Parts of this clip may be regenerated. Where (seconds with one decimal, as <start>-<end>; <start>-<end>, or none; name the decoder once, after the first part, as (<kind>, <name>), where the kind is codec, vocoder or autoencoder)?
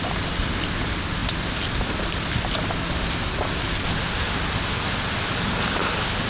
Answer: none